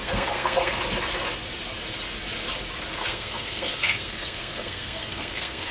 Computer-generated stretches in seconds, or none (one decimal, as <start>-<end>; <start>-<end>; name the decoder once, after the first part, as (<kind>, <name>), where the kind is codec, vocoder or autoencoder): 0.0-0.8 (codec, SNAC); 2.9-5.7